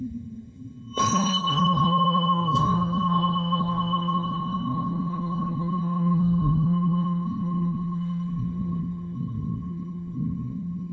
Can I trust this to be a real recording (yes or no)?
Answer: no